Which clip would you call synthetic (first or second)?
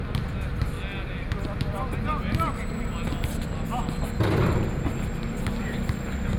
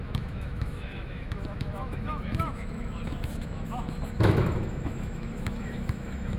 second